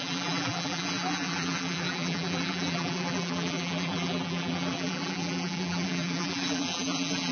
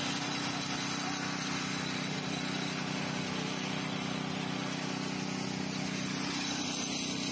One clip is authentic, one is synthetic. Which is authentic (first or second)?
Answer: second